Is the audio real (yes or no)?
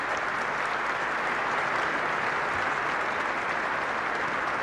yes